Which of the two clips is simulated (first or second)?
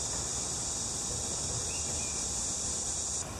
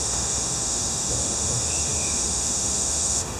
second